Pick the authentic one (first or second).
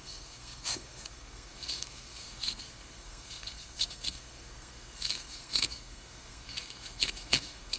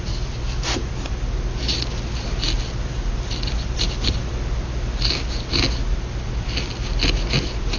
second